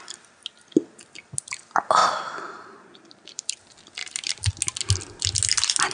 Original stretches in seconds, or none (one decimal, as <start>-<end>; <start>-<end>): 0.0-2.0; 3.6-4.0; 4.5-5.9